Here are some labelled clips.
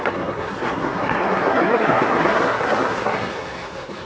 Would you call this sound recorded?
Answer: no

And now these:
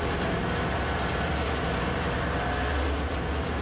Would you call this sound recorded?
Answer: yes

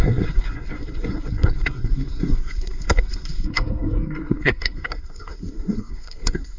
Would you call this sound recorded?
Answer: no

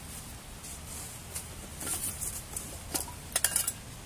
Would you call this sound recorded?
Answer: yes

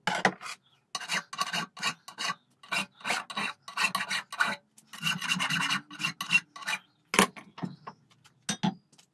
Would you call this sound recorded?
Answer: yes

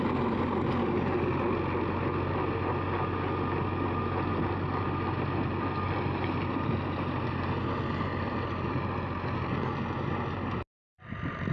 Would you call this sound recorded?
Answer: yes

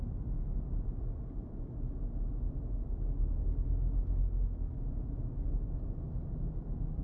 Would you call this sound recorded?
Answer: yes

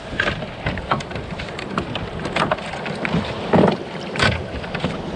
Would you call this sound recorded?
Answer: yes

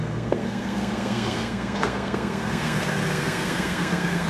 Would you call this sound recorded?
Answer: no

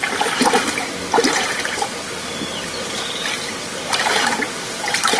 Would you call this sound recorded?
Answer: yes